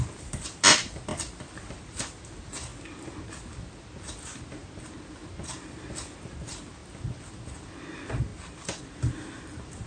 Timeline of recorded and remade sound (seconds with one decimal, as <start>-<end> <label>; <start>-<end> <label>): 0.0-9.9 recorded